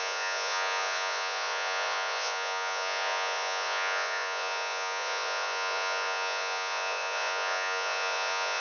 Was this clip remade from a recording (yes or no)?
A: yes